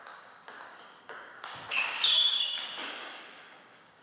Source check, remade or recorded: remade